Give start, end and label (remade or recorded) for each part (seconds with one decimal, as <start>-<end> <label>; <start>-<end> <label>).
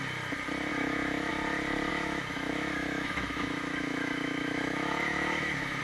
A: 0.0-0.7 recorded; 0.7-1.3 remade; 1.3-1.9 recorded; 1.9-5.8 remade